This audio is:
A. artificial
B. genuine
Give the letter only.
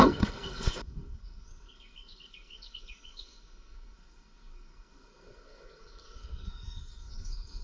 A